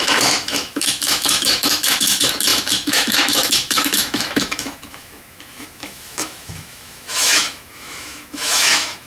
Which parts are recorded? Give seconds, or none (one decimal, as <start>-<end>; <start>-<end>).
none